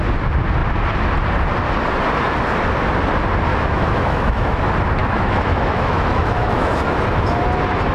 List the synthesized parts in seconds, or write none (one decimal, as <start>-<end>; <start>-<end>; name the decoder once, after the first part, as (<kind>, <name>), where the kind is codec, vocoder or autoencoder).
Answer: 3.5-4.6 (autoencoder, DAC-VAE); 5.0-7.0